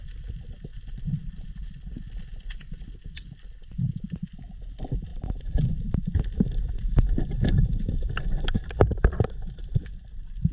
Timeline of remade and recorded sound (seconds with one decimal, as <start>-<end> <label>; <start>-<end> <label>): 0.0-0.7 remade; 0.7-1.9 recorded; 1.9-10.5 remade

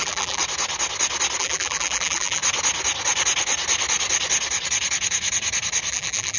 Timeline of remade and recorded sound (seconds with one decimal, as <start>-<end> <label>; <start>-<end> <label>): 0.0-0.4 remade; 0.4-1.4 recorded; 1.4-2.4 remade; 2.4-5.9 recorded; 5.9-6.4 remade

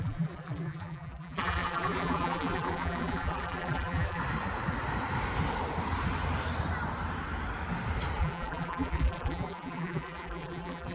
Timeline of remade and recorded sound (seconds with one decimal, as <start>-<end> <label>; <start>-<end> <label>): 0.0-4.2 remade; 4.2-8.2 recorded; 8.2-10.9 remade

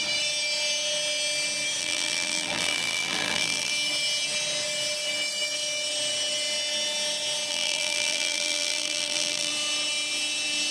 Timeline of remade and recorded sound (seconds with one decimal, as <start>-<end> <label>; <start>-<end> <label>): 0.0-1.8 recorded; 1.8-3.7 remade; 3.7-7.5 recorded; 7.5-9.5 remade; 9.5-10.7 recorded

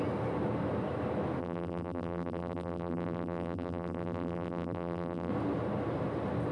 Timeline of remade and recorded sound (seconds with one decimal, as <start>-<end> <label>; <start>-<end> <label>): 0.0-1.4 recorded; 1.4-5.3 remade; 5.3-6.5 recorded

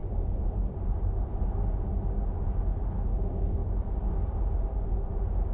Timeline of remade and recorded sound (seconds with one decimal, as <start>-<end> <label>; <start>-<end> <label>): 0.0-1.3 remade; 1.3-3.6 recorded; 3.6-4.1 remade; 4.1-5.5 recorded

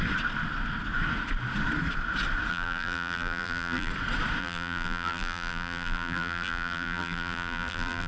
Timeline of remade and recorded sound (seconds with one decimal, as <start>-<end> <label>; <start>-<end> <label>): 0.0-2.5 recorded; 2.5-3.9 remade; 3.9-4.4 recorded; 4.4-8.1 remade

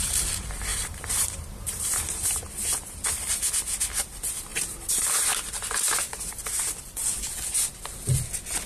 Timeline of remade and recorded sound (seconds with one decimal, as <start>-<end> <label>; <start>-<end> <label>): 0.0-0.7 recorded; 0.7-2.4 remade; 2.4-2.8 recorded; 2.8-3.3 remade; 3.3-4.5 recorded; 4.5-5.1 remade; 5.1-8.7 recorded